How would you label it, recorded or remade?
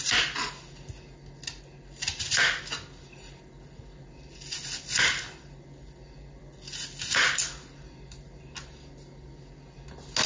recorded